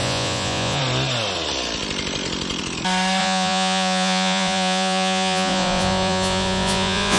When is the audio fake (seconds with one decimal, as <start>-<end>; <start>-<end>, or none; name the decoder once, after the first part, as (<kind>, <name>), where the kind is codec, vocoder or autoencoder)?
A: 0.0-0.8 (vocoder, Vocos); 3.2-7.2